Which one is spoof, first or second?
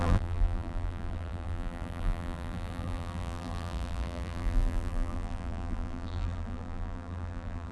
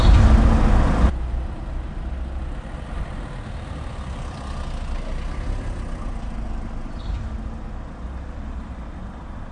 first